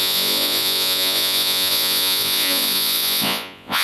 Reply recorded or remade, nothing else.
remade